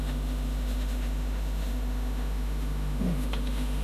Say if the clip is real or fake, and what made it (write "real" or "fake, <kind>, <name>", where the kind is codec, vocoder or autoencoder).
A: fake, autoencoder, DAC-VAE